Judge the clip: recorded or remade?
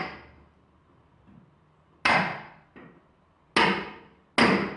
recorded